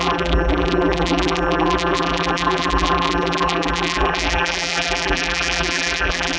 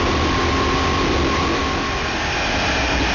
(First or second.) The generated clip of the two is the first